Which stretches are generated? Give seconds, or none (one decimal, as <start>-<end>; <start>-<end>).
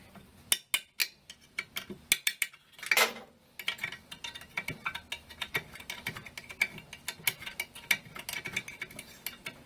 none